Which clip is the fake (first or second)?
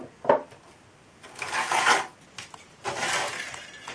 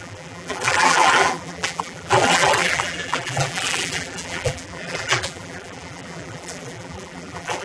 second